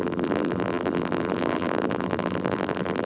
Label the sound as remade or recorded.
remade